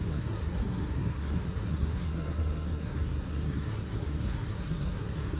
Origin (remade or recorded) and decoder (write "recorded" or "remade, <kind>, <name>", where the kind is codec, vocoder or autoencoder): remade, codec, SNAC